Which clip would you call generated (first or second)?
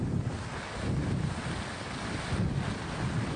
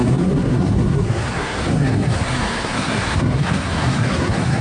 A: second